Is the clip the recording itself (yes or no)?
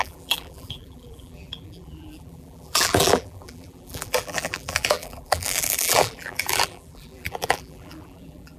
no